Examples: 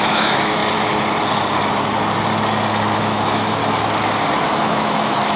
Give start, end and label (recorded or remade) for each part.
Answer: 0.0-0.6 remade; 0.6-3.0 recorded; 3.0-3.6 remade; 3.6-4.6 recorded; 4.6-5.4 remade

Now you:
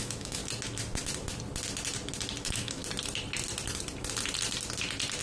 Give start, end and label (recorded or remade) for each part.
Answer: 0.0-0.4 remade; 0.4-2.4 recorded; 2.4-2.8 remade; 2.8-5.2 recorded

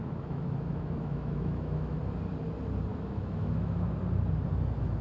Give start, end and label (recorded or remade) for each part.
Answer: 0.0-2.0 remade; 2.0-2.9 recorded; 2.9-4.0 remade; 4.0-5.0 recorded

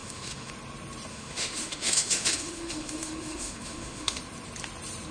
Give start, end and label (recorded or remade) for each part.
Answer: 0.0-0.5 remade; 0.5-1.1 recorded; 1.1-4.2 remade; 4.2-5.1 recorded

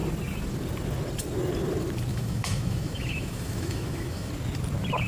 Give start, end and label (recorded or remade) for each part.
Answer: 0.0-2.1 recorded; 2.1-4.3 remade; 4.3-5.1 recorded